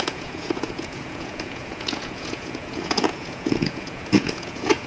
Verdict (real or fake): fake